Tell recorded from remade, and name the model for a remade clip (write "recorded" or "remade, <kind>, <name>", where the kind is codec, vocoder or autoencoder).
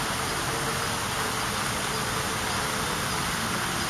recorded